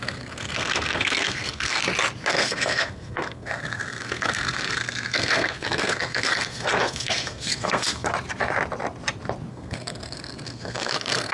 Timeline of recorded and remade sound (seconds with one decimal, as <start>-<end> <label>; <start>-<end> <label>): 0.0-1.8 remade; 1.8-2.3 recorded; 2.3-8.1 remade; 8.1-9.5 recorded; 9.5-11.3 remade